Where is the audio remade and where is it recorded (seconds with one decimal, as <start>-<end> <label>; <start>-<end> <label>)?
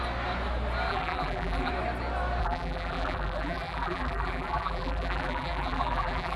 0.0-0.9 recorded; 0.9-1.7 remade; 1.7-2.4 recorded; 2.4-6.4 remade